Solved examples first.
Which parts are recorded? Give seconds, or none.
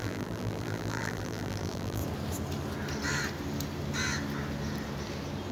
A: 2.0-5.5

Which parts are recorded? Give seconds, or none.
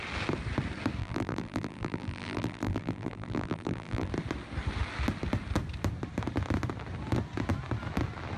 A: 0.0-1.0; 4.1-8.4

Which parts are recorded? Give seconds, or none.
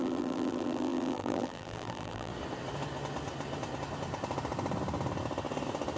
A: 2.3-6.0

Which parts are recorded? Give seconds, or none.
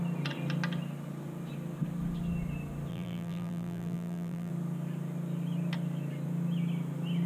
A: 0.0-2.9; 4.5-7.3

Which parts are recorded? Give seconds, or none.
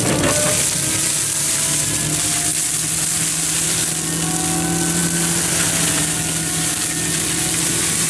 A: 0.0-8.1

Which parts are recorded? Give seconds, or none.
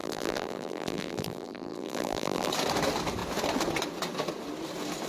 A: 2.5-5.1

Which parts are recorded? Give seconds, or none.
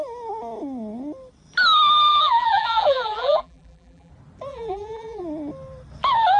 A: 0.0-2.1; 4.1-4.5; 5.2-6.4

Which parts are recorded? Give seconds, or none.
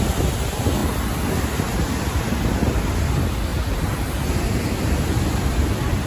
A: 0.0-3.5; 4.7-6.1